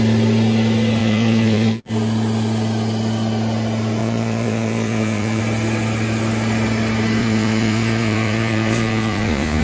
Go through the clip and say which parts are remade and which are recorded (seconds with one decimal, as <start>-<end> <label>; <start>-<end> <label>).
0.0-1.0 recorded; 1.0-1.9 remade; 1.9-4.0 recorded; 4.0-5.4 remade; 5.4-7.2 recorded; 7.2-9.6 remade